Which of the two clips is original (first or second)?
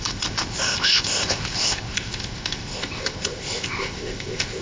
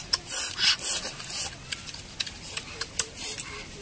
second